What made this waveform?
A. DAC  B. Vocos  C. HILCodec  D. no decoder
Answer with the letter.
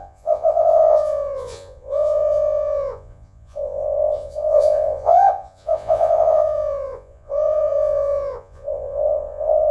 B